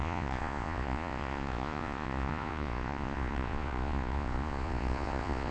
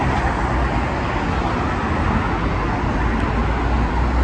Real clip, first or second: second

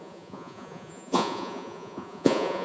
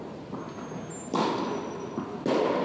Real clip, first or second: second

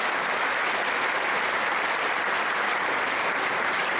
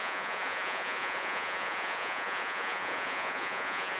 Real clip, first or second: first